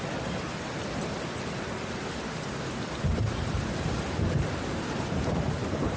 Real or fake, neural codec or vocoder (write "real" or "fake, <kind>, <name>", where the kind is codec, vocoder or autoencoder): real